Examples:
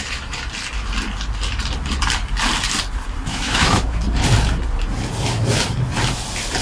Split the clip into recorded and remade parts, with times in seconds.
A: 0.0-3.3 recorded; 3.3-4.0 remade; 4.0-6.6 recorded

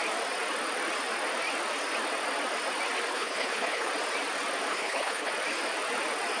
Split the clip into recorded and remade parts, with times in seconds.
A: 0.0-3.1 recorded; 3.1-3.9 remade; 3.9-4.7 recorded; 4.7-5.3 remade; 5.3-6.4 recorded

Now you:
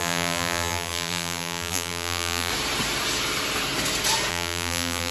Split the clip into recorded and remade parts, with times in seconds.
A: 0.0-2.5 remade; 2.5-4.3 recorded; 4.3-5.1 remade

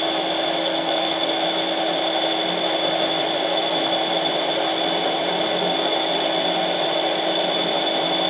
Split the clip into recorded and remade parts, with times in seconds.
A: 0.0-0.6 recorded; 0.6-1.3 remade; 1.3-8.3 recorded

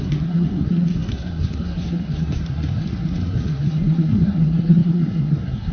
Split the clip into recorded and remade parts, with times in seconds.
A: 0.0-5.7 remade